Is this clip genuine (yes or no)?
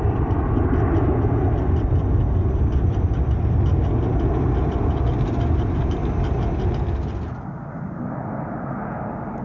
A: yes